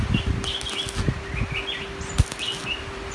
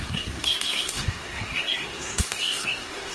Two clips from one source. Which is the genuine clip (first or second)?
first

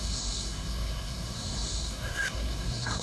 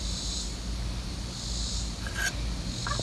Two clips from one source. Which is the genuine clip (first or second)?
second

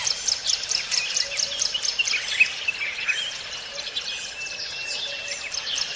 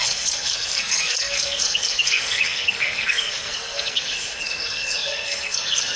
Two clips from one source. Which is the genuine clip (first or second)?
first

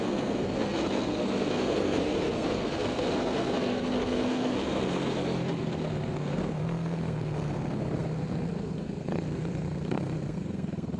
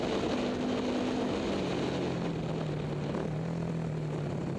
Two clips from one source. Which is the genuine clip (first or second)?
second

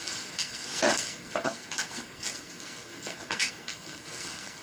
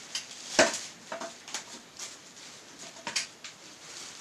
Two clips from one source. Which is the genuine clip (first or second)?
second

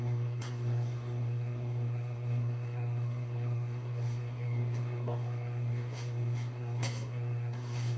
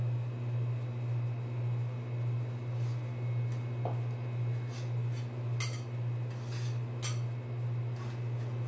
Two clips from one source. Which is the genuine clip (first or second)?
second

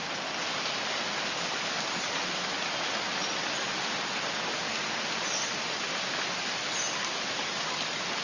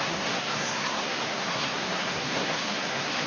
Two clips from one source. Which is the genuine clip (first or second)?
first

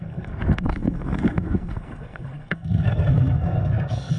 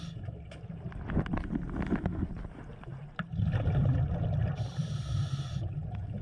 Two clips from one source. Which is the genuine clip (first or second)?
second